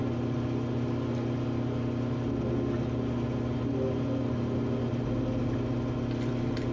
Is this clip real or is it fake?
real